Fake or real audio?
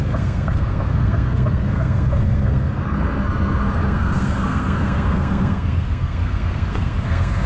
fake